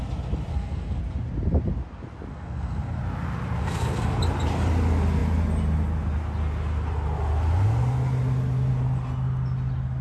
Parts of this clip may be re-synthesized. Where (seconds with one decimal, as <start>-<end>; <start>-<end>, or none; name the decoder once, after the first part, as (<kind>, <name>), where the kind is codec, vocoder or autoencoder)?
0.5-1.0 (codec, SNAC); 2.3-3.0; 3.6-4.2